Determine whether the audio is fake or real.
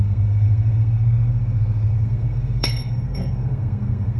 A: fake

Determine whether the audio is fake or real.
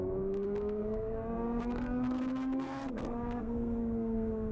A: fake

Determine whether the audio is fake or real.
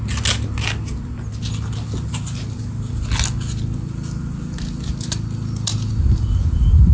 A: real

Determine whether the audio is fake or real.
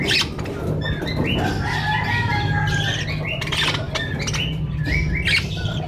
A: real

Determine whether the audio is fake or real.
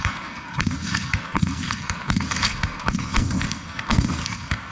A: fake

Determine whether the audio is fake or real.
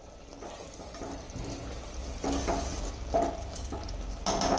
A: real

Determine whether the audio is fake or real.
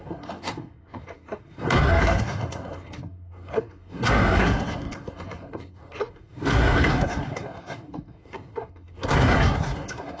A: fake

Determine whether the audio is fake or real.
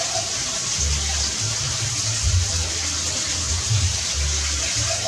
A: real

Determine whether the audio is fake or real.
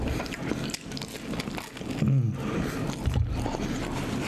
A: real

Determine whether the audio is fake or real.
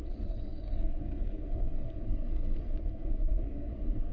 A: fake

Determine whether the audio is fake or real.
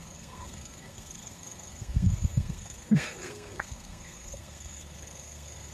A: fake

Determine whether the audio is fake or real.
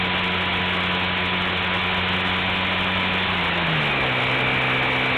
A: real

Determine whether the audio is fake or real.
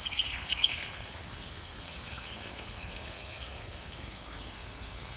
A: fake